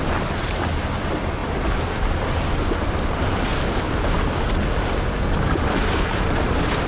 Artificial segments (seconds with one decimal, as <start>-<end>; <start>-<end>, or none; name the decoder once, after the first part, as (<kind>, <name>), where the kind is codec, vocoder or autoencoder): none